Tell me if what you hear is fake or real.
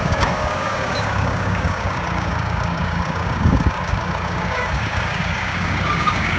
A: fake